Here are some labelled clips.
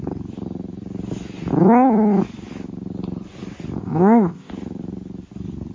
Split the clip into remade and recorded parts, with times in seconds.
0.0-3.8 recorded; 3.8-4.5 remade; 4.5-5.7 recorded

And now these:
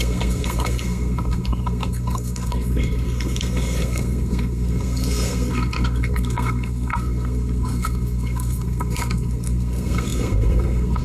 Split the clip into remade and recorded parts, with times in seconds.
0.0-11.0 remade